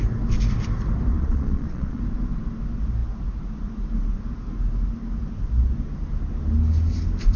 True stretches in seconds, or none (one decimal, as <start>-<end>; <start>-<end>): 0.0-1.1; 2.0-7.4